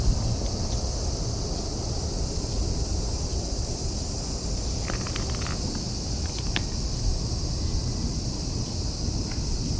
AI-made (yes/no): no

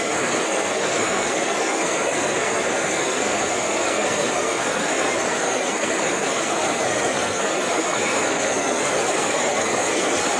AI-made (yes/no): yes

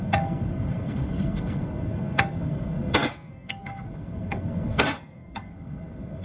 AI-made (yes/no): yes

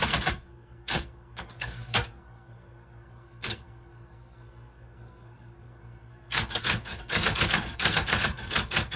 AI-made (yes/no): yes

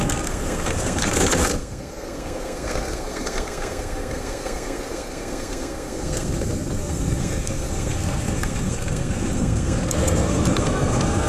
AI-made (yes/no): yes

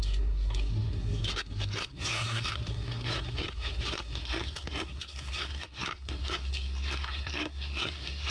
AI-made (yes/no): yes